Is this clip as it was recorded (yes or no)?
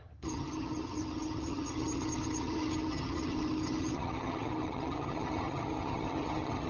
no